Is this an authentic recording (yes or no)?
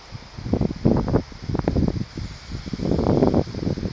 yes